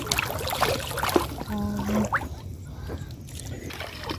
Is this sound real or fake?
real